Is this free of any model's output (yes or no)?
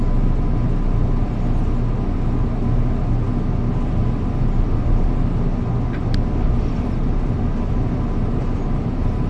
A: yes